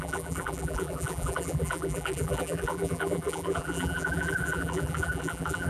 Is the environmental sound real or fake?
fake